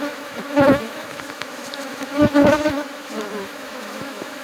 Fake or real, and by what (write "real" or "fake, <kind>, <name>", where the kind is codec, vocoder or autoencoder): fake, autoencoder, DAC-VAE